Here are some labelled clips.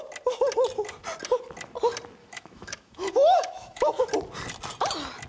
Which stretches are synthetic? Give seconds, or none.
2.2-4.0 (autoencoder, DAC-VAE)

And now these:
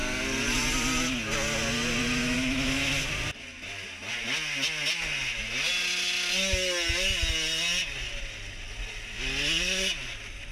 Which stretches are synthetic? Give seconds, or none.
2.2-3.1 (autoencoder, DAC-VAE)

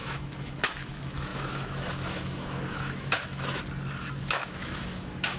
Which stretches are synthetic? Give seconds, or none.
0.0-3.6 (autoencoder, DAC-VAE); 4.2-5.4